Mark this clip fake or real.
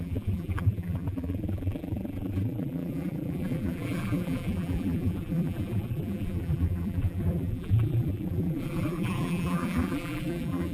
fake